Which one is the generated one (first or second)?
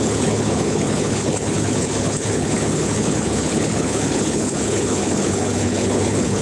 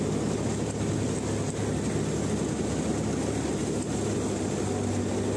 first